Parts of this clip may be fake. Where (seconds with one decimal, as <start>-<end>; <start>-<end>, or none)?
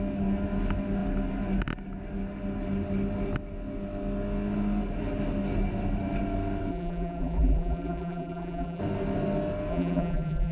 6.7-8.8; 9.7-10.5